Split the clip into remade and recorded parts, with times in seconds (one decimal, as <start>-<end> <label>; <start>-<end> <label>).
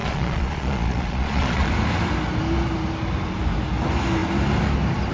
0.0-1.7 remade; 1.7-5.1 recorded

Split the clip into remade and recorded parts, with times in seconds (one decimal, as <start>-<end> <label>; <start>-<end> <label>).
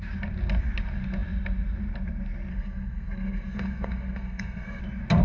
0.0-2.5 recorded; 2.5-4.8 remade; 4.8-5.2 recorded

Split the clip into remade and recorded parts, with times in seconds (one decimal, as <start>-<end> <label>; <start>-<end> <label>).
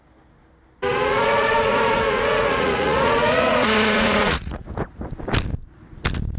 0.0-0.9 recorded; 0.9-4.7 remade; 4.7-6.4 recorded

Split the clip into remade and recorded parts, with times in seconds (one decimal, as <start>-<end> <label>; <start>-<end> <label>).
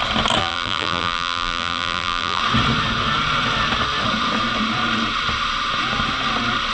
0.0-0.4 recorded; 0.4-2.4 remade; 2.4-6.7 recorded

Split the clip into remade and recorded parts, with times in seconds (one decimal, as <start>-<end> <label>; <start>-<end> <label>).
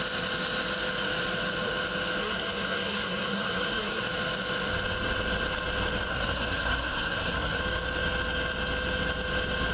0.0-2.2 recorded; 2.2-4.0 remade; 4.0-6.1 recorded; 6.1-7.6 remade; 7.6-9.7 recorded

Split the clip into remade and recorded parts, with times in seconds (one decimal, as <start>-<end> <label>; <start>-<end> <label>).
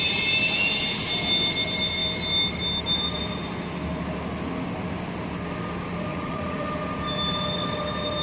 0.0-6.1 recorded; 6.1-6.7 remade; 6.7-8.2 recorded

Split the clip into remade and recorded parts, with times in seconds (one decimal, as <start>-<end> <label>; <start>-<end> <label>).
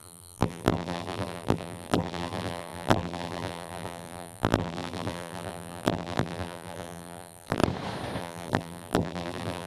0.0-7.6 remade; 7.6-8.2 recorded; 8.2-9.7 remade